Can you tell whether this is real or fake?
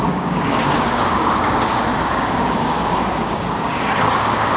fake